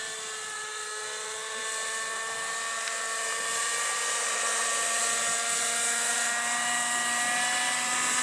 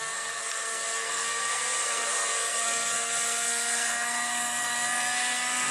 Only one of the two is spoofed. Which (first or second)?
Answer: second